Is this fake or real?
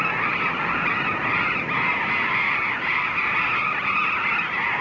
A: real